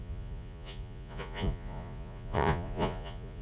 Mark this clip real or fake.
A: fake